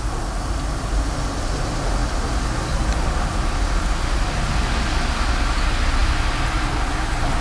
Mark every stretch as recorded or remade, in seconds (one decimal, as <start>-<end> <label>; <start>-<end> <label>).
0.0-7.4 recorded